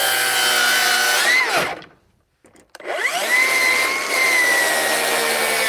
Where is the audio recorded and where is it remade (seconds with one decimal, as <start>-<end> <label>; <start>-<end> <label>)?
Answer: 0.0-1.7 recorded; 1.7-4.7 remade; 4.7-5.7 recorded